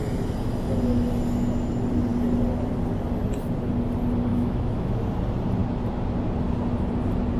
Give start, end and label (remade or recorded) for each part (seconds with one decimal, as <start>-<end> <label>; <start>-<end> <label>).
0.0-4.3 recorded; 4.3-5.0 remade; 5.0-7.4 recorded